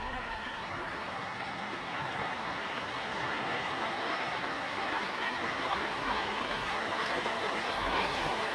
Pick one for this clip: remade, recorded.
remade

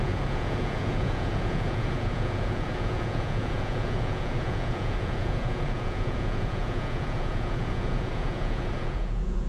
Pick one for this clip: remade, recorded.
remade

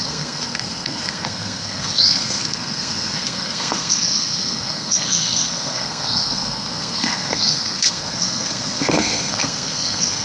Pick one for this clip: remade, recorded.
remade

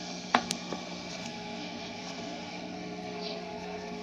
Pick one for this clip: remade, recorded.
remade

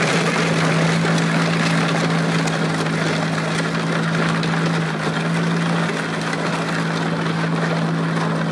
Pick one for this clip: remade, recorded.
recorded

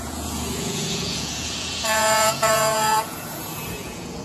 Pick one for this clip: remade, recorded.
remade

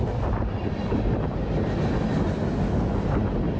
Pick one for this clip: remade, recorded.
recorded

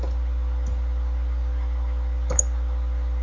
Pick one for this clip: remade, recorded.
recorded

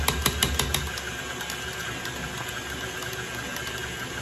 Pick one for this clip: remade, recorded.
recorded